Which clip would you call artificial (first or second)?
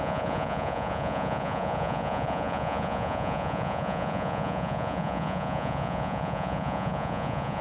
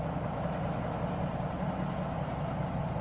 first